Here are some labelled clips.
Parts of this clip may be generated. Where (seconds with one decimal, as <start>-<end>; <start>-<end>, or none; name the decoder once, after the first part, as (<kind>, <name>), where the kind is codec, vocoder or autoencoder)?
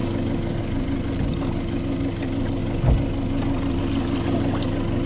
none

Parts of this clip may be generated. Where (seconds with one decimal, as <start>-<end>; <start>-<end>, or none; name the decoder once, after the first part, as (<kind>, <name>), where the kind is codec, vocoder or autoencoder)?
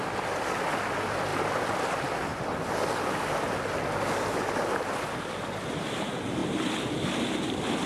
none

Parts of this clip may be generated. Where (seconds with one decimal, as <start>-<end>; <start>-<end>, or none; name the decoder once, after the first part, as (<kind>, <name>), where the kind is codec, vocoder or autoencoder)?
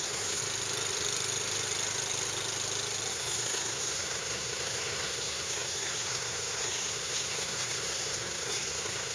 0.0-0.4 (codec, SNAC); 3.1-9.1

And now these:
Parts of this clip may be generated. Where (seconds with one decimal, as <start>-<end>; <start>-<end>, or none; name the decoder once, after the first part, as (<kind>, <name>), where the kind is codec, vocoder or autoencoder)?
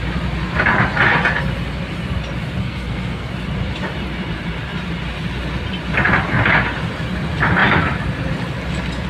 2.6-3.3 (codec, SNAC)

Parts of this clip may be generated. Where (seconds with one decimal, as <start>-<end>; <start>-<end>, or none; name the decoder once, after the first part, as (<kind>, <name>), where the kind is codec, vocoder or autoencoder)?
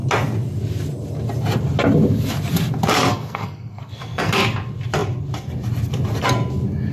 3.1-4.4 (codec, SNAC)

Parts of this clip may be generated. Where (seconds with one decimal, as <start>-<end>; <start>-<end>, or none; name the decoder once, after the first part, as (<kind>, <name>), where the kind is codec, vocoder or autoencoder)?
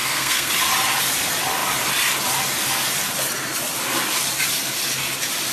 0.0-0.5 (codec, SNAC)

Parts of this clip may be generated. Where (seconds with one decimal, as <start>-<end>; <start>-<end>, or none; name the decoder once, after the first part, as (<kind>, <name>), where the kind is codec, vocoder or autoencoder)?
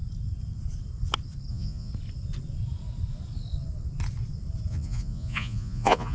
1.5-1.9 (vocoder, Vocos); 4.7-6.1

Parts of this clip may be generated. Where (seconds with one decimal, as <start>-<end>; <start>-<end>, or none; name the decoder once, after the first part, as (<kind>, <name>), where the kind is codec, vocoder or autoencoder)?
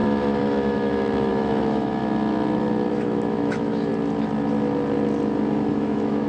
0.0-2.0 (autoencoder, DAC-VAE); 2.9-3.9; 5.7-6.3